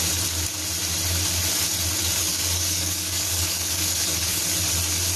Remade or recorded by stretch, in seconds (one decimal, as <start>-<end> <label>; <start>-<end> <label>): 0.0-2.2 recorded; 2.2-4.4 remade; 4.4-5.2 recorded